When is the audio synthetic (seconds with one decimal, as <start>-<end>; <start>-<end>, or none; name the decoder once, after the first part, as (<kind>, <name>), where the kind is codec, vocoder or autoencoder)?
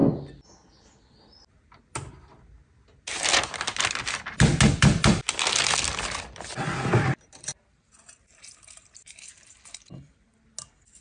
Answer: none